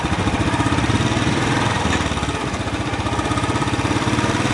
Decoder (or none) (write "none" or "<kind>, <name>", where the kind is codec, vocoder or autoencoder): vocoder, BigVGAN v2